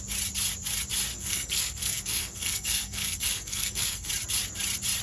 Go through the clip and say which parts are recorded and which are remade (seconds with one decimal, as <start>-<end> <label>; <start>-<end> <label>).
0.0-1.1 recorded; 1.1-4.1 remade; 4.1-5.0 recorded

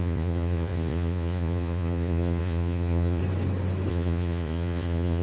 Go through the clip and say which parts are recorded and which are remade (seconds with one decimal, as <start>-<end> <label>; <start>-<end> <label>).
0.0-3.2 remade; 3.2-3.9 recorded; 3.9-5.2 remade

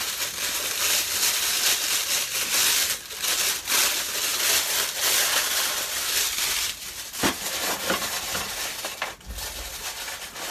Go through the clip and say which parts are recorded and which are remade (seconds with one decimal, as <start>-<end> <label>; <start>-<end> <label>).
0.0-10.5 recorded

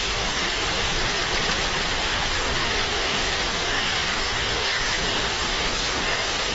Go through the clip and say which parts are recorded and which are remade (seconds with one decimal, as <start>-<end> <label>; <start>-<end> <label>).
0.0-1.2 remade; 1.2-1.9 recorded; 1.9-6.5 remade

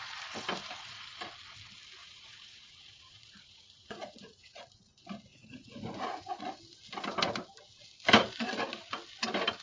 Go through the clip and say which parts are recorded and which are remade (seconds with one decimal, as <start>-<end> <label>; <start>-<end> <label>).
0.0-2.0 recorded; 2.0-4.6 remade; 4.6-5.3 recorded; 5.3-6.4 remade; 6.4-9.6 recorded